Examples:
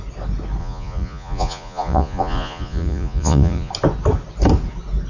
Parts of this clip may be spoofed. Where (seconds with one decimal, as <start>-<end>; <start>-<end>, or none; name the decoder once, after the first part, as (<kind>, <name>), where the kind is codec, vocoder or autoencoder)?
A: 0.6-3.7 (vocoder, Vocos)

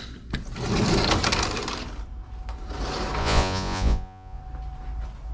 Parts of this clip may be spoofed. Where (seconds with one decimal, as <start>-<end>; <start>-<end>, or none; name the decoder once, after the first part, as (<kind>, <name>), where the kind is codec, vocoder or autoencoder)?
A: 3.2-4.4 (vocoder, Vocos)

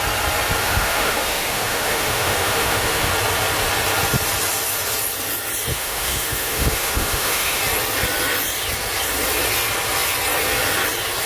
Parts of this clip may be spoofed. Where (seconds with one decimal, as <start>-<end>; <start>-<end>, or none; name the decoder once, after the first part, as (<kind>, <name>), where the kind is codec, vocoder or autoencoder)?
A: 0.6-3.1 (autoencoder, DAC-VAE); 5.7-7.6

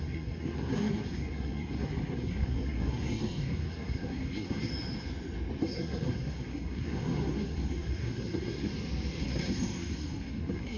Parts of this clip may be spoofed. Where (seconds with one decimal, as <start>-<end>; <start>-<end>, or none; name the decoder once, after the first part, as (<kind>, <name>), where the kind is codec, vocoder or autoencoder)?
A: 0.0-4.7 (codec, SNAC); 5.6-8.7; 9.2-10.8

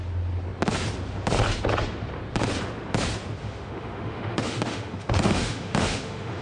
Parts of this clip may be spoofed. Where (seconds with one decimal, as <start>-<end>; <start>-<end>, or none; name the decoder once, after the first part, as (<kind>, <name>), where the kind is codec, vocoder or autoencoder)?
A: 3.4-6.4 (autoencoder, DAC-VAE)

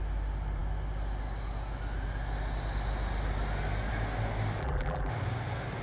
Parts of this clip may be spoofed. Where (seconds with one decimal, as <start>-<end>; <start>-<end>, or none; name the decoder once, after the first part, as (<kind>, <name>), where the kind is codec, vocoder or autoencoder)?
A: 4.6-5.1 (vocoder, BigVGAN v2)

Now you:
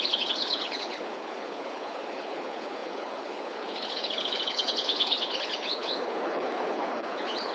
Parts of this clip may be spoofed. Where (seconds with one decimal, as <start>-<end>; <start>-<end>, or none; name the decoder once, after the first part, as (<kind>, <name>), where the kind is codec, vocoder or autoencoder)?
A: 0.0-7.5 (codec, HILCodec)

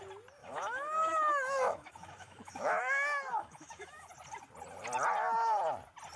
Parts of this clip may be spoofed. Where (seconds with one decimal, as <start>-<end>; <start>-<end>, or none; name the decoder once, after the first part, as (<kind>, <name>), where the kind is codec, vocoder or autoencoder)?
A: 0.4-4.1 (autoencoder, DAC-VAE)